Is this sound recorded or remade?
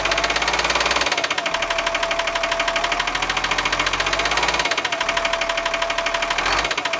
recorded